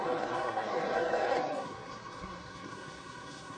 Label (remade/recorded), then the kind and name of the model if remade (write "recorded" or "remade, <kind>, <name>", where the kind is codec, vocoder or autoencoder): remade, codec, SNAC